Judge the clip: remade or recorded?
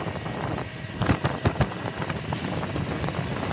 recorded